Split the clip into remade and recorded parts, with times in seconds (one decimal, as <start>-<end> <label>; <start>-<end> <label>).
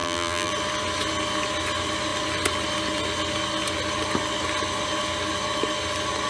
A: 0.0-0.5 remade; 0.5-6.3 recorded